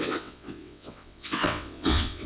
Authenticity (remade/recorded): remade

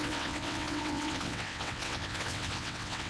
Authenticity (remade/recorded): remade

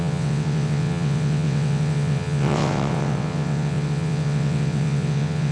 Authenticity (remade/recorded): remade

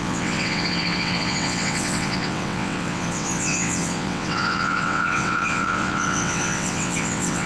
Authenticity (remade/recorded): remade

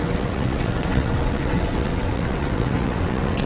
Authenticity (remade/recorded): remade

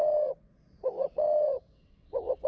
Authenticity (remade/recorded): remade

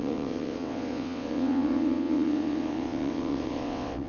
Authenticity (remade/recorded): remade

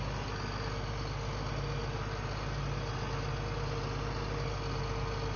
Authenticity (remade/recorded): recorded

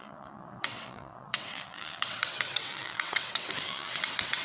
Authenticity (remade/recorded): remade